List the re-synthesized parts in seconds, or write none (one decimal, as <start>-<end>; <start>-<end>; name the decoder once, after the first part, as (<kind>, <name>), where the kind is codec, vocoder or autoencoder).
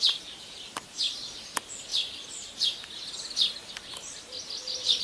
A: none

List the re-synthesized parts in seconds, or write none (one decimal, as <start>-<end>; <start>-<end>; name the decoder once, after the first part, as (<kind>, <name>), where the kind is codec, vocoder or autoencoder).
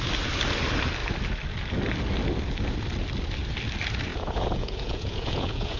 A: 4.1-5.8 (vocoder, Vocos)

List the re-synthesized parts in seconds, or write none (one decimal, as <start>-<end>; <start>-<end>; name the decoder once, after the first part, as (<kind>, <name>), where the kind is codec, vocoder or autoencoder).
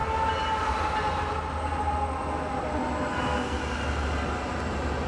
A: 3.1-3.6 (codec, SNAC)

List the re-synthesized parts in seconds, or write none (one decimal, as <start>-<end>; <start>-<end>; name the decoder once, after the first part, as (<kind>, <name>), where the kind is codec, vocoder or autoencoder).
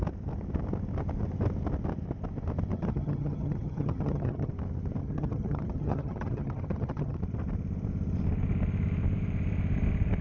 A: 2.7-4.5 (vocoder, HiFi-GAN); 5.0-7.2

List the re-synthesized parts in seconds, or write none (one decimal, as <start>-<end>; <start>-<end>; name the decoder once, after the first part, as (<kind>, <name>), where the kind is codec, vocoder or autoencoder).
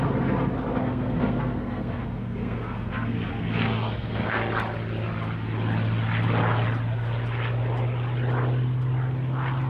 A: 0.8-4.4 (codec, SNAC)